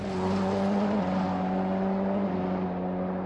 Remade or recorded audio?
recorded